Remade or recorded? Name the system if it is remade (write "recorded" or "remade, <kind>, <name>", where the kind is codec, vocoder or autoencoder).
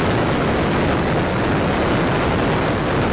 recorded